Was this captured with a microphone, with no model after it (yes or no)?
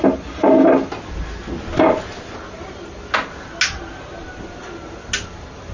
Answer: yes